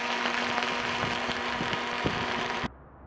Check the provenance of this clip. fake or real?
real